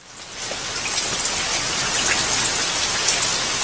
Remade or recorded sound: recorded